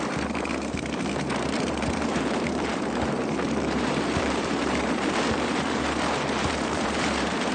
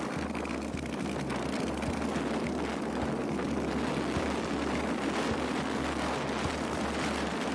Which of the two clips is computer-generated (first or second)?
first